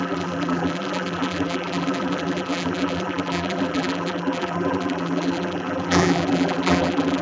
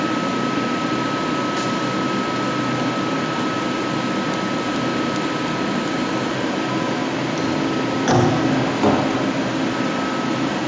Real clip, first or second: second